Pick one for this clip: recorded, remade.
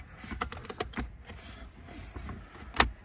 recorded